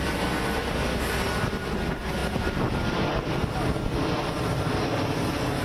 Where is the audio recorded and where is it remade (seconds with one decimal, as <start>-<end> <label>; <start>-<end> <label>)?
0.0-5.6 recorded